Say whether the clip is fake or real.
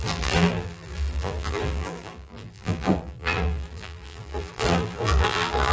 fake